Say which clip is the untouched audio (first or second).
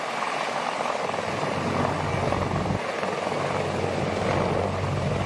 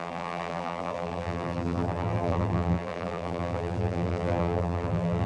first